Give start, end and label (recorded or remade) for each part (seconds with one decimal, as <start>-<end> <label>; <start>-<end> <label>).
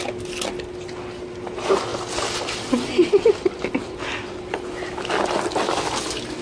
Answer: 0.0-1.9 recorded; 1.9-4.9 remade; 4.9-6.4 recorded